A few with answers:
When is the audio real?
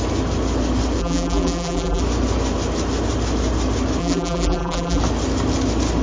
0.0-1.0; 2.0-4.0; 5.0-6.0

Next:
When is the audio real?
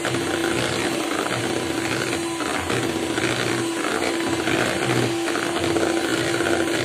0.0-6.8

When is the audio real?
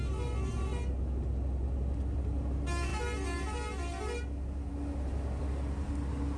0.0-6.4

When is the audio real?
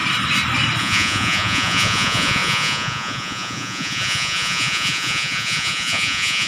0.0-0.8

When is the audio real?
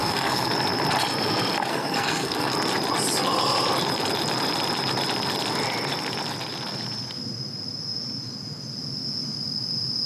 0.5-1.7; 2.5-10.1